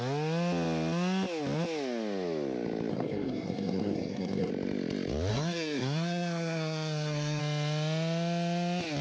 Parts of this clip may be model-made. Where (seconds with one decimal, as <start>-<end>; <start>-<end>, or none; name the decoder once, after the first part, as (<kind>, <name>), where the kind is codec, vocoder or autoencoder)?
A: 2.9-4.5 (codec, SNAC); 5.3-7.4